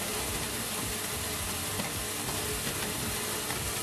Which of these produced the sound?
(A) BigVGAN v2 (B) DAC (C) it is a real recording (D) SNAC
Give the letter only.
C